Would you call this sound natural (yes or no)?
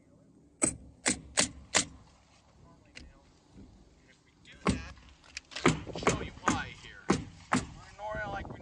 yes